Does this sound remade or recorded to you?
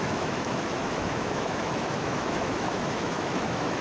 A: remade